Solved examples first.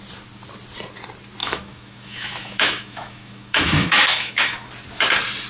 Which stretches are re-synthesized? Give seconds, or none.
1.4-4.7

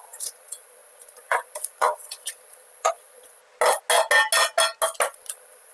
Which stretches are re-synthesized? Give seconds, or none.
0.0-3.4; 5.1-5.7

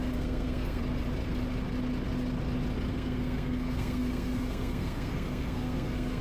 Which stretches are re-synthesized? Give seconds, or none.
0.0-0.8; 2.9-6.2

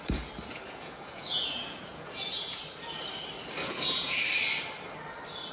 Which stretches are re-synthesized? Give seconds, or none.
0.5-2.6; 3.6-4.2

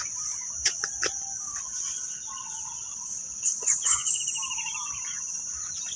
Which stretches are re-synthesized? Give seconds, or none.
1.5-4.2

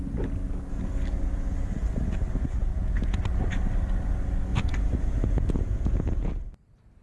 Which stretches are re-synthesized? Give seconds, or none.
2.6-3.2; 4.5-6.3